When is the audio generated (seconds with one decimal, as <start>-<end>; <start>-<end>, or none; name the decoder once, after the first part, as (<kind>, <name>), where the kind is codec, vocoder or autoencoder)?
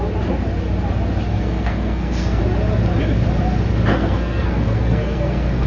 1.3-2.4 (codec, SNAC); 3.9-5.7